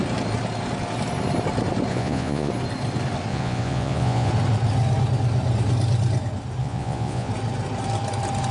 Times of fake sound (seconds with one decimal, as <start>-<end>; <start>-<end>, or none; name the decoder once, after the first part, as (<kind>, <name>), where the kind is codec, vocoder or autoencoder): 1.9-2.5 (vocoder, Vocos); 3.3-4.3; 6.6-7.3